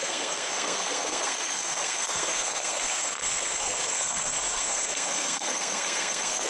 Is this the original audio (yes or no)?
no